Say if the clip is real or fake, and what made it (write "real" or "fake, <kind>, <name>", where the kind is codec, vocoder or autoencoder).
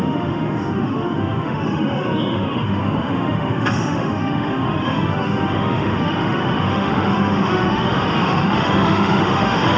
fake, autoencoder, DAC-VAE